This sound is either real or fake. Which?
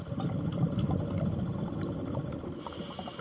real